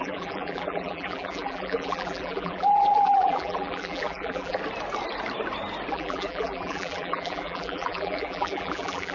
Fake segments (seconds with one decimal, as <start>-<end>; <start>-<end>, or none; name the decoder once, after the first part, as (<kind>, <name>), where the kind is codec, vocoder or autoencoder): 0.0-4.6 (vocoder, BigVGAN v2); 5.9-9.1

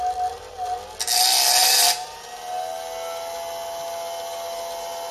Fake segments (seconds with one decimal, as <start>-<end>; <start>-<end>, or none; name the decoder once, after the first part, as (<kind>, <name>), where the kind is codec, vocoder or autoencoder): 1.6-2.3 (vocoder, BigVGAN v2)

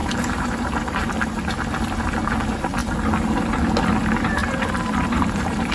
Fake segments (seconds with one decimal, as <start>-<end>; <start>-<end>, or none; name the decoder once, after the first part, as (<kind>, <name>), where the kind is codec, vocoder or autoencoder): 0.0-1.1 (vocoder, BigVGAN v2); 4.4-5.7

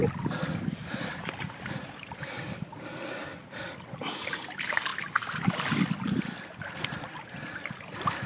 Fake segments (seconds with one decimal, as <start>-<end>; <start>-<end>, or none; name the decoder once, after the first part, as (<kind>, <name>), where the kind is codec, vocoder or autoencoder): none

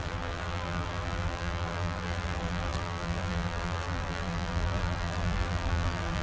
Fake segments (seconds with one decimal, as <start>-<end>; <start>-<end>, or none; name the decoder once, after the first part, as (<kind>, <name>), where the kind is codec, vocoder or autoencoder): 0.0-6.2 (vocoder, BigVGAN v2)

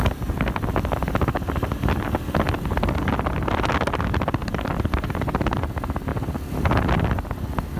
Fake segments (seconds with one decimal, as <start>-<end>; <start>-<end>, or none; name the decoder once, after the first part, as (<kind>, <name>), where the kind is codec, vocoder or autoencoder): 4.4-5.6 (vocoder, BigVGAN v2)

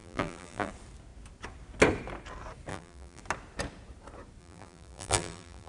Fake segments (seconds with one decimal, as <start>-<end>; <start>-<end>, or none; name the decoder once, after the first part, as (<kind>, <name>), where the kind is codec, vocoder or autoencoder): 0.0-0.7 (vocoder, BigVGAN v2); 2.7-3.2; 4.4-5.7